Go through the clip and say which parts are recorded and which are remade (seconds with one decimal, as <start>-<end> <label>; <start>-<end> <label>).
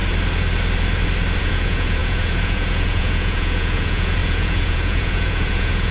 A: 0.0-1.4 recorded; 1.4-5.9 remade